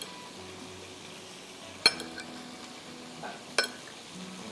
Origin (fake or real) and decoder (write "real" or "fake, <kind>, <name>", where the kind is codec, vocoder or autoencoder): real